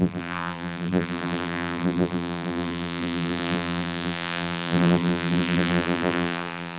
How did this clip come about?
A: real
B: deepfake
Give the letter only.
B